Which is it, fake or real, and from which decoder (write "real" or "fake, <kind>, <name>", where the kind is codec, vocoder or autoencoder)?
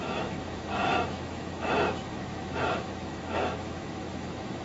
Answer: fake, autoencoder, DAC-VAE